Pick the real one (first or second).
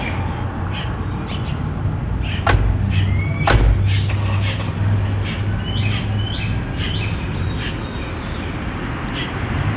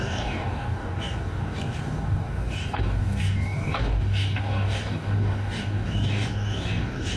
first